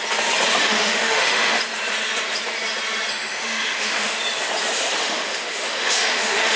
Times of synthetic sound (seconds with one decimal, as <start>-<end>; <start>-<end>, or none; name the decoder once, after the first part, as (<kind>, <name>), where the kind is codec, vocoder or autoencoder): 0.6-1.6 (autoencoder, DAC-VAE); 3.1-4.2; 5.0-6.6

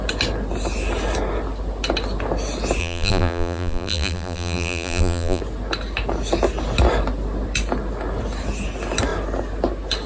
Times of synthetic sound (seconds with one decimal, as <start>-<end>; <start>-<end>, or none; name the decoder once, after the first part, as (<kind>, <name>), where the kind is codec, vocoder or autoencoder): 2.8-5.4 (vocoder, BigVGAN v2)

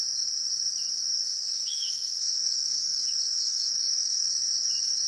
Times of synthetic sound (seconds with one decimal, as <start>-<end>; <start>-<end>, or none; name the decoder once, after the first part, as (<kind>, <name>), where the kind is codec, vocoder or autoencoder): 1.1-4.2 (autoencoder, DAC-VAE)